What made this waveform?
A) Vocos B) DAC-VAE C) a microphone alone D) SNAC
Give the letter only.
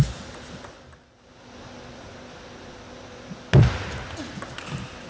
C